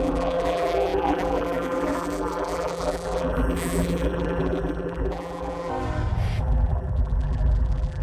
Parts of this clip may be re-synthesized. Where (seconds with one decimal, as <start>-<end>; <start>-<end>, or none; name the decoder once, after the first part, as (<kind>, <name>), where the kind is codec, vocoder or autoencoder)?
0.0-5.7 (vocoder, BigVGAN v2); 6.4-8.0